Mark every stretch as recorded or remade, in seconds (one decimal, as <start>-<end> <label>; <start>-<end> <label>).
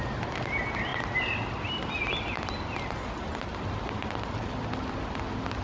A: 0.0-5.6 recorded